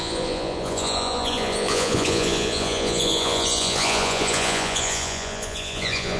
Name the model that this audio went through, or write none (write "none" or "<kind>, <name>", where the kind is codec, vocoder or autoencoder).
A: vocoder, Vocos